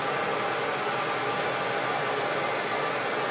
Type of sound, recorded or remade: recorded